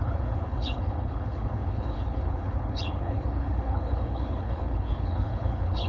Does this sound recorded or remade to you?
remade